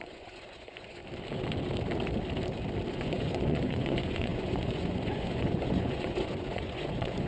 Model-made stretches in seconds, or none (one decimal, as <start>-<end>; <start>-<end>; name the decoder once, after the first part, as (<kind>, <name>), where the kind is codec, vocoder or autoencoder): 0.0-1.0 (vocoder, Vocos); 2.9-7.3